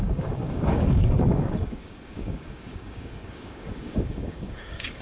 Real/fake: fake